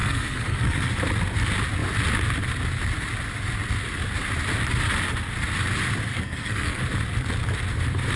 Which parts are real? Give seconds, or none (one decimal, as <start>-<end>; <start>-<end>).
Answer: 0.9-6.1; 6.8-8.2